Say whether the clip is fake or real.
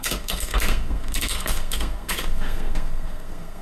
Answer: fake